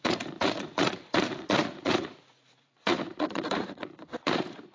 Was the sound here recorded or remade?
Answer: remade